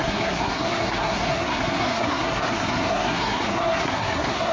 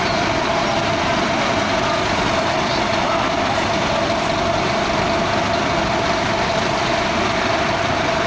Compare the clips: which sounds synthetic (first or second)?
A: first